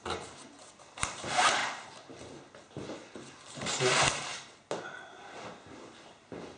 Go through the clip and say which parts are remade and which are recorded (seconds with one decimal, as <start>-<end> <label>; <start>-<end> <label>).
0.0-6.6 recorded